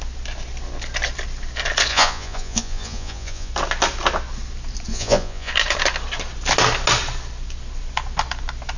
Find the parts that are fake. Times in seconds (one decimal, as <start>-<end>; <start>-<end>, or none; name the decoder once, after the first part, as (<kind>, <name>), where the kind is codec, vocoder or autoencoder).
1.9-3.5 (vocoder, Vocos); 4.9-5.5